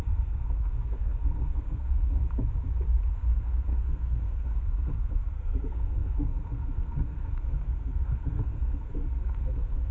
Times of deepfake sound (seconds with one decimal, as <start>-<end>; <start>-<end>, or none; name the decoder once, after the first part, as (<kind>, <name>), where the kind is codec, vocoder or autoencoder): 0.0-2.2 (codec, SNAC); 3.1-9.9